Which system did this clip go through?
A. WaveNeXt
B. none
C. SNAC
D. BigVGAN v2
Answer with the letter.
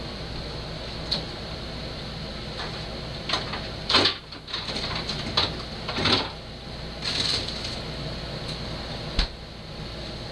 B